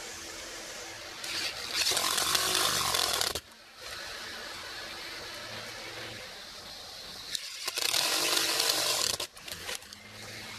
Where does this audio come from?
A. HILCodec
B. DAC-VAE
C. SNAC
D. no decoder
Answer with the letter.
D